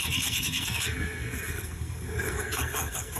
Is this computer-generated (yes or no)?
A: yes